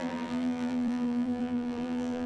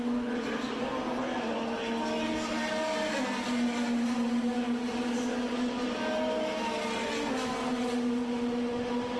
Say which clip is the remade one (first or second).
first